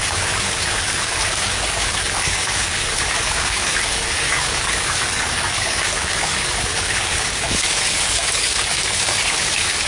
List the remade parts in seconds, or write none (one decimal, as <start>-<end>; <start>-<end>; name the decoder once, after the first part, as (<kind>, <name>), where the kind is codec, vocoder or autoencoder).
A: 0.0-9.9 (codec, DAC)